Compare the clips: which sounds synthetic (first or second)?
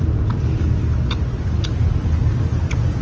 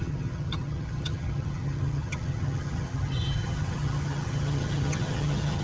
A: second